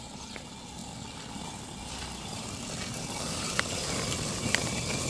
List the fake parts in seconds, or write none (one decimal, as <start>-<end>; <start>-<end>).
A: none